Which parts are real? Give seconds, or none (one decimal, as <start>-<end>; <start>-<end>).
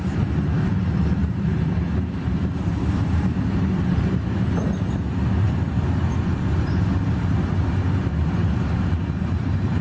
0.0-1.2; 4.2-8.4